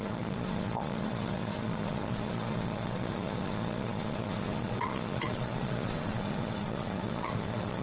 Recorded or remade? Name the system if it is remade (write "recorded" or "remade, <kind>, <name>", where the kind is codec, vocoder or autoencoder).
remade, vocoder, Vocos